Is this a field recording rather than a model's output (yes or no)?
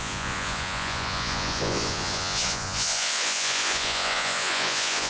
no